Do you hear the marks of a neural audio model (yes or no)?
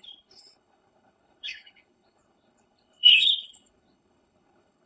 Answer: yes